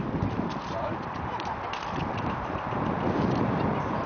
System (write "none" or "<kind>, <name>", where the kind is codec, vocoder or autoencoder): vocoder, BigVGAN v2